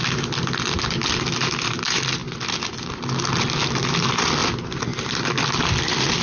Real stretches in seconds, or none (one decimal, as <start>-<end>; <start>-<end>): 0.0-6.2